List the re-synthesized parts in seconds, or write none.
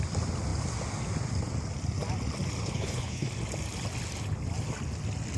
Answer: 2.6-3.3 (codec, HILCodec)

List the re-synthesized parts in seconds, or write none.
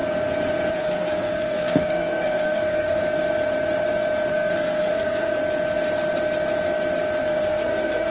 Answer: 0.7-3.0 (codec, SNAC); 4.3-5.3; 7.2-8.1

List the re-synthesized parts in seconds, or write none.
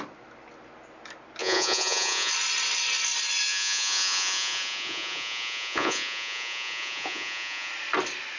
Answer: 1.4-2.3 (vocoder, Vocos); 3.5-7.7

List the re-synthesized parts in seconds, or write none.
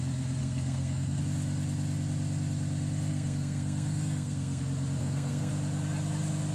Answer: 0.4-1.2 (codec, SNAC); 3.1-4.6; 5.0-5.5